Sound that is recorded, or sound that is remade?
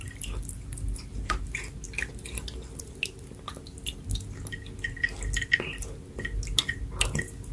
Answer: recorded